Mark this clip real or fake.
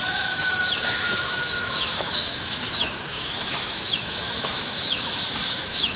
fake